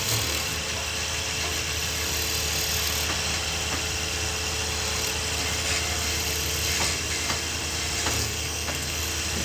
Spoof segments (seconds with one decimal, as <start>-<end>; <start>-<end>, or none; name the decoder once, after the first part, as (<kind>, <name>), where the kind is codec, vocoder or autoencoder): 8.2-9.0 (codec, SNAC)